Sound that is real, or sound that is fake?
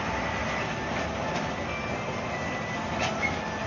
real